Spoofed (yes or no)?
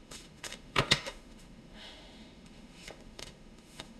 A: yes